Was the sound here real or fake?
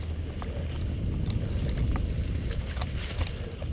real